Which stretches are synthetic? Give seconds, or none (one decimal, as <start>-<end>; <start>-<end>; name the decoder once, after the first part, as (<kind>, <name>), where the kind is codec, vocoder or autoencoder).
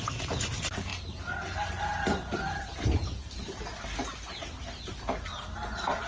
none